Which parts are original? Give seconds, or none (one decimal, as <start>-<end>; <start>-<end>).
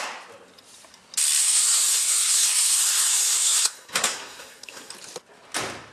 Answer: 0.0-1.4; 4.9-5.9